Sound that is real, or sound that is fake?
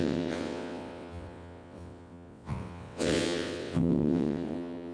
fake